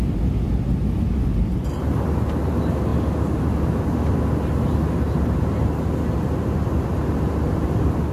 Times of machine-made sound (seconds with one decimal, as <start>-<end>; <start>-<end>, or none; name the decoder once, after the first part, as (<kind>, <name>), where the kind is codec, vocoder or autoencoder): none